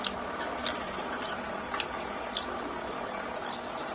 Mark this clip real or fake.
real